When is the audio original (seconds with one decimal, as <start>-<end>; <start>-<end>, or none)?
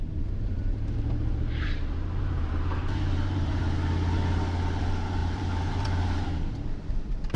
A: 3.6-4.8